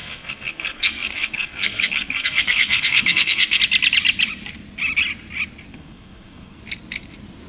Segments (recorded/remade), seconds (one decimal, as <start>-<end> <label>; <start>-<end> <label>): 0.0-3.6 remade; 3.6-5.7 recorded; 5.7-6.6 remade; 6.6-7.5 recorded